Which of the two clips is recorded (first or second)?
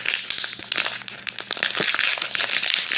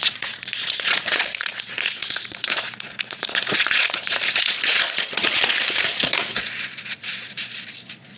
first